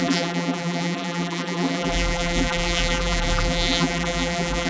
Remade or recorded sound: remade